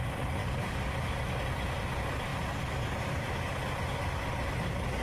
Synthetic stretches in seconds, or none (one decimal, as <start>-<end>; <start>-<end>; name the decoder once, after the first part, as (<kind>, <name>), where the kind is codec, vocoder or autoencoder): 0.4-1.1 (codec, DAC)